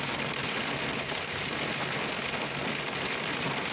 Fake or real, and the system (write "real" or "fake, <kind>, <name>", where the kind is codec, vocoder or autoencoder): real